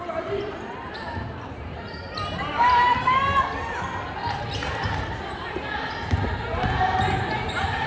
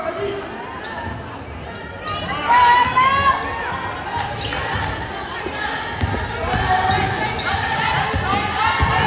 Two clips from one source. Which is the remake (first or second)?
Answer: first